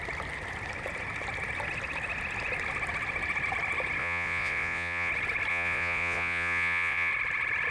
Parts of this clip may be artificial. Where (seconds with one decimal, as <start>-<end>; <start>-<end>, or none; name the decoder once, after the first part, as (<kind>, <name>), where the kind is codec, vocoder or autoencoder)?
4.0-5.1 (vocoder, Vocos); 5.5-7.1